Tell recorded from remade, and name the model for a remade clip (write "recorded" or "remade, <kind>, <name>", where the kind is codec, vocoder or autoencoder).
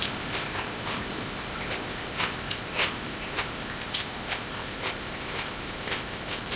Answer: remade, codec, ZipCodec